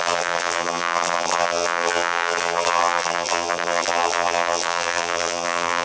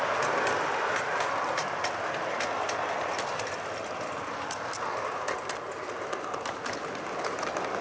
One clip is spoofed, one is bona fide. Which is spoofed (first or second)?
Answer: first